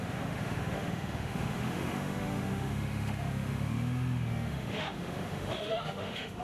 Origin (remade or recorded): remade